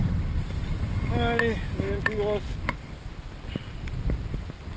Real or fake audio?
real